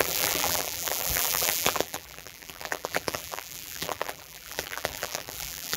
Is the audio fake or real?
fake